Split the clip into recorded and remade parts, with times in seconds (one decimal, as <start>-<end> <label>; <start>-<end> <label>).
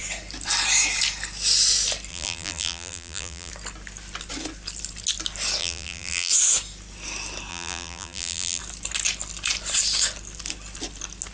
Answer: 0.0-2.1 recorded; 2.1-3.5 remade; 3.5-5.6 recorded; 5.6-6.3 remade; 6.3-7.5 recorded; 7.5-8.6 remade; 8.6-11.3 recorded